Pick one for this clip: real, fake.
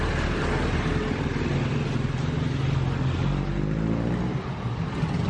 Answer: real